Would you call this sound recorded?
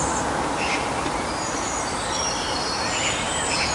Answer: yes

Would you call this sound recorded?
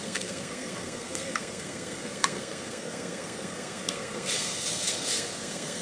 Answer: no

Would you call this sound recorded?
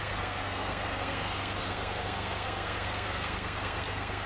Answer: no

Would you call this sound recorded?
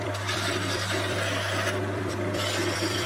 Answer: no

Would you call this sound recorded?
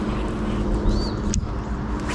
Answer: yes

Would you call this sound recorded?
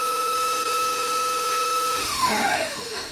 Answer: no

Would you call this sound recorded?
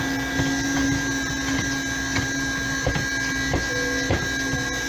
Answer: yes